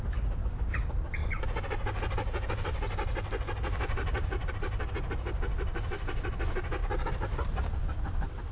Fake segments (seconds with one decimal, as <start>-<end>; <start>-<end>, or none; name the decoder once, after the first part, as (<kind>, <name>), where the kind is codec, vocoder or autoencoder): none